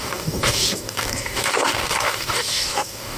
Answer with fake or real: fake